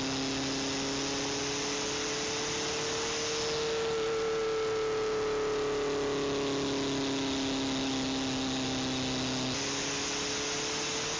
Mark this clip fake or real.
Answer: real